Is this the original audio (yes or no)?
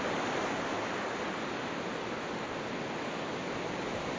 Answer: yes